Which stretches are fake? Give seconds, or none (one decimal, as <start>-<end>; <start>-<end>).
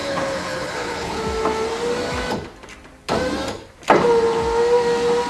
0.0-1.2